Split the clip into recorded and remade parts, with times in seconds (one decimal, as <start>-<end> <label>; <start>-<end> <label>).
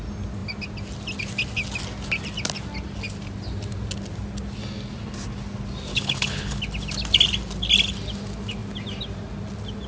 0.0-5.9 recorded; 5.9-6.6 remade; 6.6-9.9 recorded